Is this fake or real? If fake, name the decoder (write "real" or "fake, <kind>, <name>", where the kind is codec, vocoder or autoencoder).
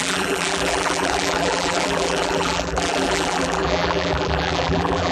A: fake, vocoder, BigVGAN v2